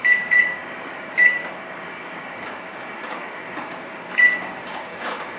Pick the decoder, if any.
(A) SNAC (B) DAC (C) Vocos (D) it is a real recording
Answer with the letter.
B